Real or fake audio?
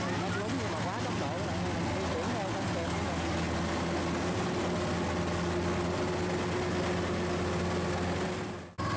real